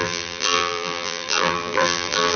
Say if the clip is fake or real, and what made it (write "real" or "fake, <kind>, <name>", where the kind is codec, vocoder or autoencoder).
fake, vocoder, BigVGAN v2